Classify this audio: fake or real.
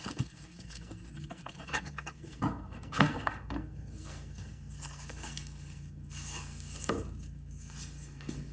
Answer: fake